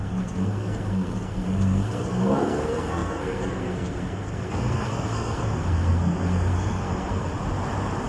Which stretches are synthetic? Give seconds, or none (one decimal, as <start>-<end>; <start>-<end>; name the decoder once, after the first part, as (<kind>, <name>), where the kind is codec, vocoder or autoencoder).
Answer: 0.0-7.3 (codec, SNAC)